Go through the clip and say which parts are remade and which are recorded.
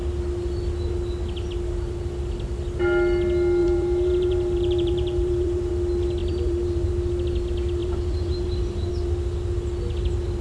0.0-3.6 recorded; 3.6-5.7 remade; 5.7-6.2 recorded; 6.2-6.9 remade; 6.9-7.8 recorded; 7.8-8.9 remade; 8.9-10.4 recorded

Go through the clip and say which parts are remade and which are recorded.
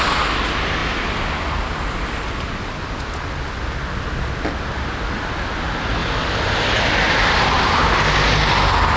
0.0-9.0 recorded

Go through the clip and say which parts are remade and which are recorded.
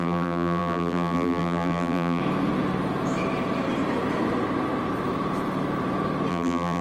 0.0-2.2 remade; 2.2-6.3 recorded; 6.3-6.8 remade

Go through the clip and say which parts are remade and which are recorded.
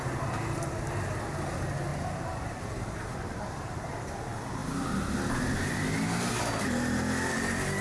0.0-1.9 recorded; 1.9-3.8 remade; 3.8-7.8 recorded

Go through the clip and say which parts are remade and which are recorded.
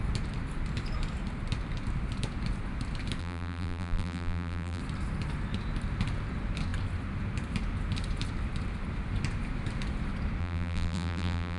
0.0-3.2 recorded; 3.2-4.8 remade; 4.8-10.4 recorded; 10.4-11.6 remade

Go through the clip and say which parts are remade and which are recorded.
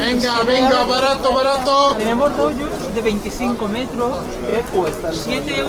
0.0-3.4 remade; 3.4-5.7 recorded